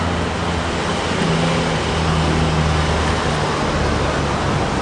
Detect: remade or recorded recorded